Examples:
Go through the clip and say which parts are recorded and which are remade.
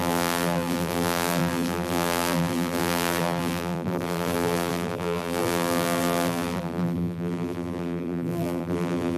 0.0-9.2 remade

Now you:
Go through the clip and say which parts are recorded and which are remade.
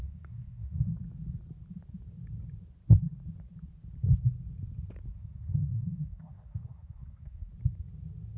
0.0-0.9 remade; 0.9-5.1 recorded; 5.1-7.5 remade; 7.5-8.4 recorded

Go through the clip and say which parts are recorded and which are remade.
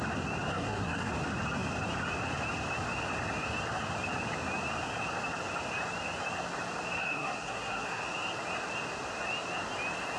0.0-0.5 recorded; 0.5-1.1 remade; 1.1-7.0 recorded; 7.0-8.0 remade; 8.0-10.2 recorded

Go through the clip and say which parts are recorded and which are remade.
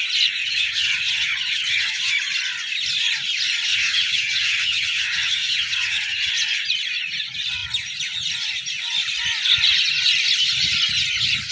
0.0-0.4 recorded; 0.4-2.1 remade; 2.1-3.7 recorded; 3.7-6.3 remade; 6.3-11.5 recorded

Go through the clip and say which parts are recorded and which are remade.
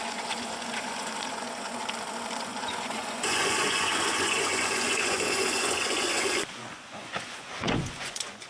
0.0-1.8 remade; 1.8-2.4 recorded; 2.4-8.5 remade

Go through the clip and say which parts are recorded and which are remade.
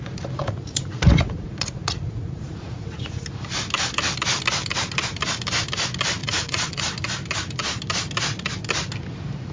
0.0-0.4 recorded; 0.4-3.2 remade; 3.2-6.2 recorded; 6.2-6.8 remade; 6.8-9.5 recorded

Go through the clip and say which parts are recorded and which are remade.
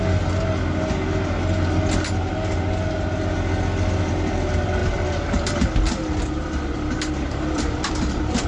0.0-4.8 recorded; 4.8-8.5 remade